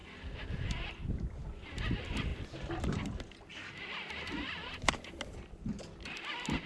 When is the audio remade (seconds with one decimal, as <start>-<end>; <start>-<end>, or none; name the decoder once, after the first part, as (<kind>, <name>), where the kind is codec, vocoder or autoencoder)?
none